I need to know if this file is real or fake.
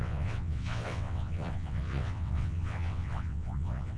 fake